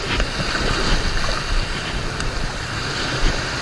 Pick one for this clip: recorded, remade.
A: recorded